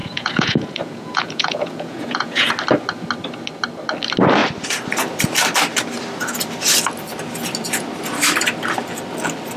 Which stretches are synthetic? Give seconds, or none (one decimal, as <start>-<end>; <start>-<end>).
0.0-2.5